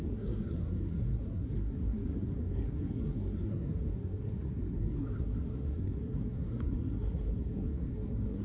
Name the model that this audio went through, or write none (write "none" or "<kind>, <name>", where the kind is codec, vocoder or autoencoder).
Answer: codec, SNAC